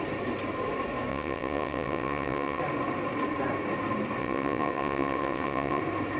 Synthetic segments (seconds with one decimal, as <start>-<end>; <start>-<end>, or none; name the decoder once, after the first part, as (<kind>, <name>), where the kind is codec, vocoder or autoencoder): 1.1-2.6 (vocoder, WaveNeXt); 4.2-5.8